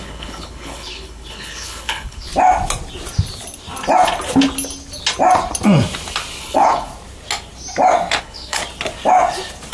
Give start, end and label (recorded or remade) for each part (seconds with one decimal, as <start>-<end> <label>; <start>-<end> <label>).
0.0-2.3 remade; 2.3-6.4 recorded; 6.4-6.9 remade; 6.9-8.2 recorded; 8.2-8.6 remade; 8.6-9.7 recorded